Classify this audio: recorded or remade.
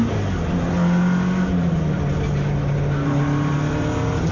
recorded